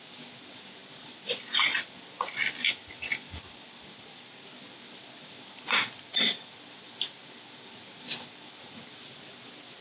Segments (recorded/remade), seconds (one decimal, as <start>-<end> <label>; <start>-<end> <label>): 0.0-9.8 recorded